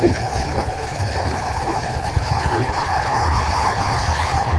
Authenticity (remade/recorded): remade